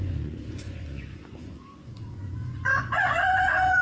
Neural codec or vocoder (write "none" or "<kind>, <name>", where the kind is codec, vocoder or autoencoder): vocoder, Vocos